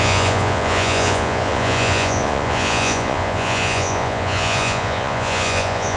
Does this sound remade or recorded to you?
remade